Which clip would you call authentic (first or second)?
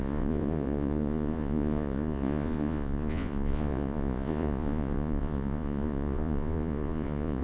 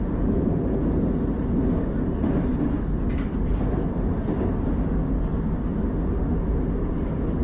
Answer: second